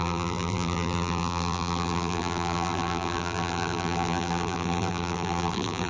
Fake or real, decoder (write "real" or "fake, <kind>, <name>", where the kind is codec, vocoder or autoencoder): fake, vocoder, BigVGAN v2